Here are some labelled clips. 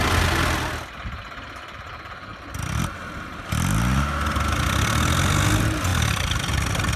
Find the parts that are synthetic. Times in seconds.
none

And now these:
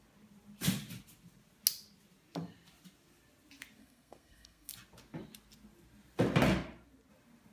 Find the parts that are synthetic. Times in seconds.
3.8-4.7 (codec, SNAC)

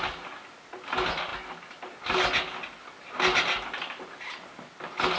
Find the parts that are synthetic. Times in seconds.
none

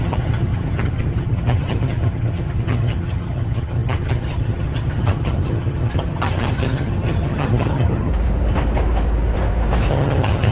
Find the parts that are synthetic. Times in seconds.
0.0-8.1 (vocoder, HiFi-GAN); 9.9-10.5

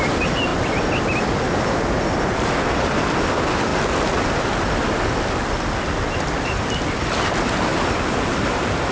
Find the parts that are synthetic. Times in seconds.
none

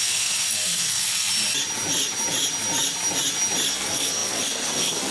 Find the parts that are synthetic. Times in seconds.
0.0-1.3 (codec, SNAC); 3.7-5.1

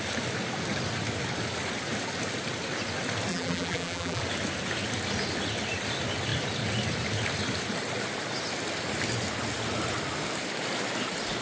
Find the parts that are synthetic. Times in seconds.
3.3-4.2 (vocoder, BigVGAN v2)

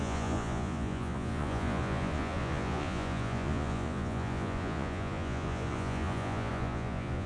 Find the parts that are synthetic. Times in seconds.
0.0-7.3 (vocoder, Vocos)